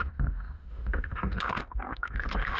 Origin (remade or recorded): remade